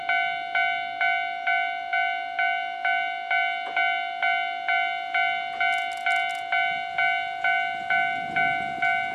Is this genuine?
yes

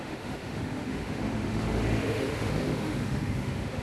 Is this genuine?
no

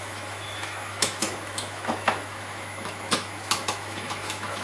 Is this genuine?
no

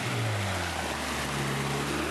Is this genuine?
yes